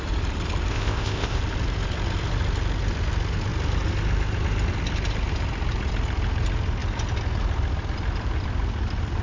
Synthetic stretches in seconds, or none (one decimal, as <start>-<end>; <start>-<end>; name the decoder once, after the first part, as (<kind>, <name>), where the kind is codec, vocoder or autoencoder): 0.7-1.4 (codec, ZipCodec)